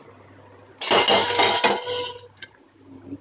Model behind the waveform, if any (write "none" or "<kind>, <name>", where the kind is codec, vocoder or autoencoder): none